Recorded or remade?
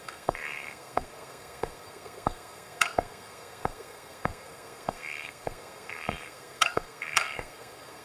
remade